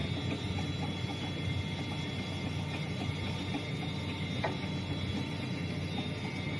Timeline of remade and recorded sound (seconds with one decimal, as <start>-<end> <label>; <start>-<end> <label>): 0.0-6.6 recorded